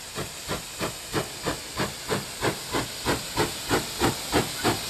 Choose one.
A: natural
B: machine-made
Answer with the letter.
A